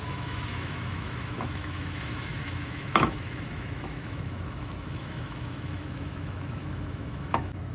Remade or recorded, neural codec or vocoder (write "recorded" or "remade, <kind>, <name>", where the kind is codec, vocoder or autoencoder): remade, autoencoder, DAC-VAE